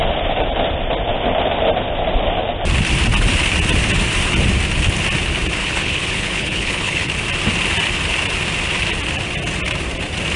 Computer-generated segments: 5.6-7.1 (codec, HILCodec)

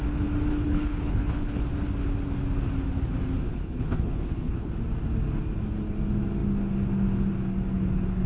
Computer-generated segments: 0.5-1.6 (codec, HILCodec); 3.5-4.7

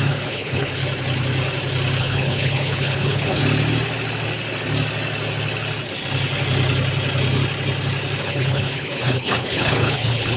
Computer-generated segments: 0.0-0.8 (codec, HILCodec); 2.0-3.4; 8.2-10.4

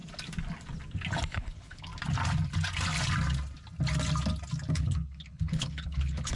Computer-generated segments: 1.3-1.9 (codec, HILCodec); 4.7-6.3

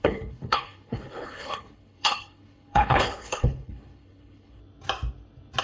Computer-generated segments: 0.0-4.6 (codec, HILCodec)